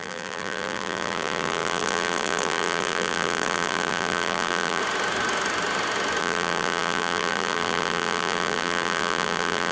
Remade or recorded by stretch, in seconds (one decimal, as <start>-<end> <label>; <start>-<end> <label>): 0.0-4.8 remade; 4.8-6.2 recorded; 6.2-9.7 remade